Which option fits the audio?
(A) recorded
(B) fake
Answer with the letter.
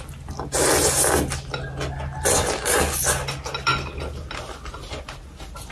A